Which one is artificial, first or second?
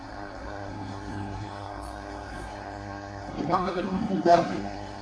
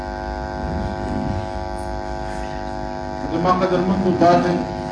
first